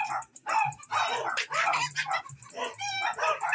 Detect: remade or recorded remade